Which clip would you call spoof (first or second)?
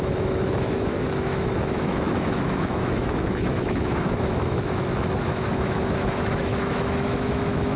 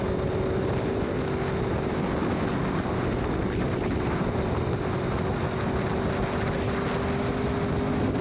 first